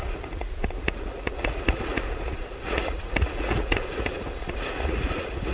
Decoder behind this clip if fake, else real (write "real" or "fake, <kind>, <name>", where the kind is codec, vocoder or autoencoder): fake, vocoder, Vocos